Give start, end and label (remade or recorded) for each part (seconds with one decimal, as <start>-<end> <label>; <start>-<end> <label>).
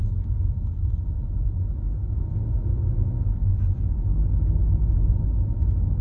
0.0-6.0 recorded